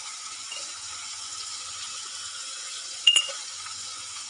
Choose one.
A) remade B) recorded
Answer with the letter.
A